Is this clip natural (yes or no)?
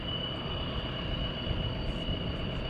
yes